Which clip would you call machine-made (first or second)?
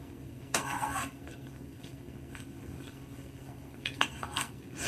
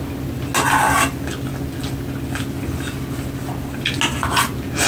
first